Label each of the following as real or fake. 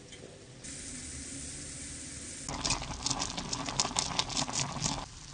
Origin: real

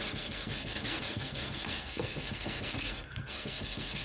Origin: fake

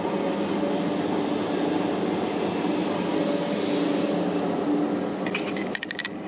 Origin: real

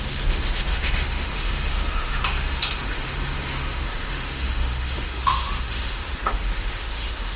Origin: fake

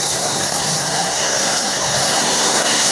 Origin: fake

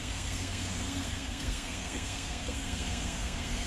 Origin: fake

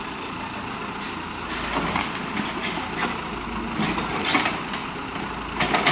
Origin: real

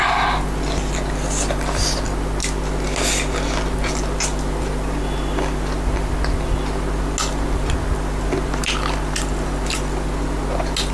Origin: real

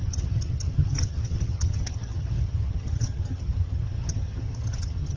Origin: fake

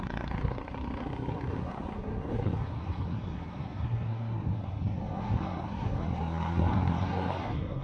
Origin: fake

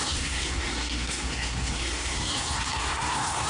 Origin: fake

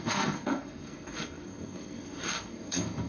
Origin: fake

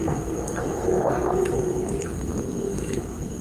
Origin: fake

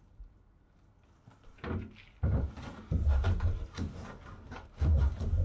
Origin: real